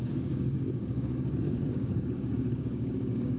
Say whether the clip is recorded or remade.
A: remade